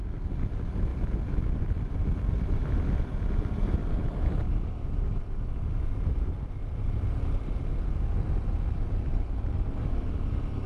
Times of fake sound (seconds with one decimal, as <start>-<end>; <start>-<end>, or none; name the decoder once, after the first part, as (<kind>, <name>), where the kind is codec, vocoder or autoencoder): 3.8-5.2 (vocoder, BigVGAN v2)